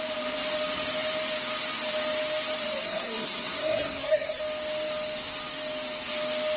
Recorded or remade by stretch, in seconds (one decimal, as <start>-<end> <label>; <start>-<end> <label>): 0.0-2.8 recorded; 2.8-4.4 remade; 4.4-6.6 recorded